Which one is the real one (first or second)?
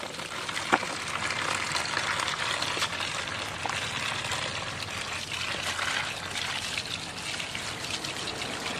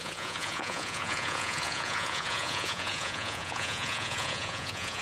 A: first